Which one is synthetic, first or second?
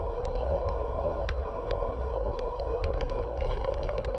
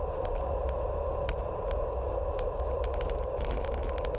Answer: first